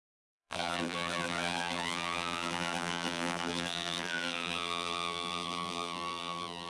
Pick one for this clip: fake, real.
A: fake